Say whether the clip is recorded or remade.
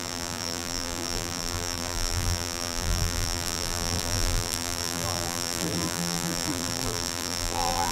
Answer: remade